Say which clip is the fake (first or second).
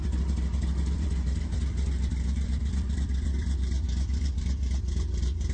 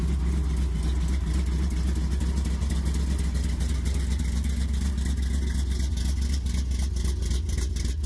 first